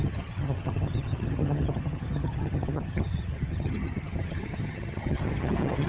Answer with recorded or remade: remade